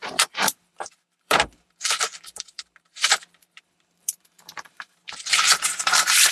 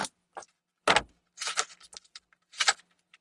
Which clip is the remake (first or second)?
first